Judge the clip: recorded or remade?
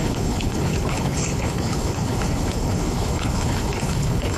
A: remade